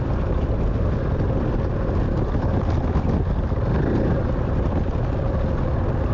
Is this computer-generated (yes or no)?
no